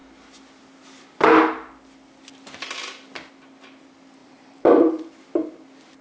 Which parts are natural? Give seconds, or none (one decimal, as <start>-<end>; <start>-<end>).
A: 0.0-4.2; 5.1-6.0